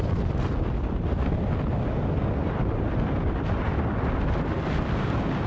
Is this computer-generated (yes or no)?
no